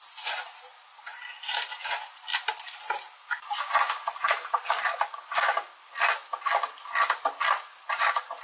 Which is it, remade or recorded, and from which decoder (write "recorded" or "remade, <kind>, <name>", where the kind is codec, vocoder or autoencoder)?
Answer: recorded